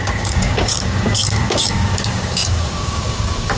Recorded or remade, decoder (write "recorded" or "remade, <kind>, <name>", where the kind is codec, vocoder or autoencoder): remade, codec, DAC